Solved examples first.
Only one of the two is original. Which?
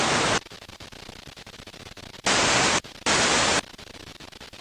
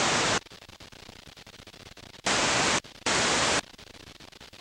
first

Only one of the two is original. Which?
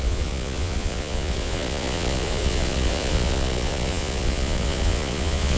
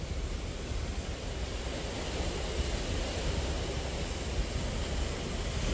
second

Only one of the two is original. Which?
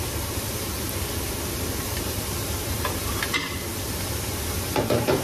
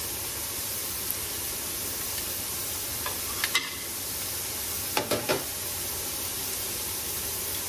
second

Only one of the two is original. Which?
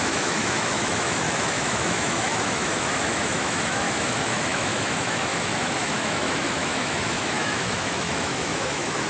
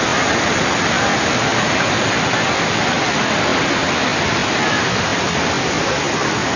second